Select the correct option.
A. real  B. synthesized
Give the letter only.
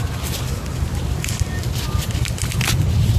A